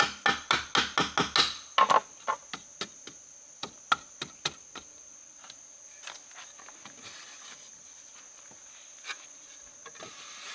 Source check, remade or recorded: recorded